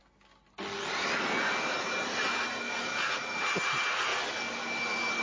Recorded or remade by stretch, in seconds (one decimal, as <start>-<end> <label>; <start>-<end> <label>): 0.0-5.2 recorded